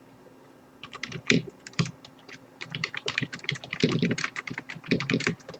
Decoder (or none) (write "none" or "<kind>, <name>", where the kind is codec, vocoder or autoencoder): vocoder, BigVGAN v2